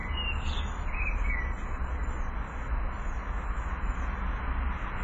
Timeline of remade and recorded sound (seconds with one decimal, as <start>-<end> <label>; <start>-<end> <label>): 0.0-5.0 recorded